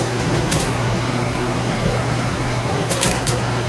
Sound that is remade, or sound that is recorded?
remade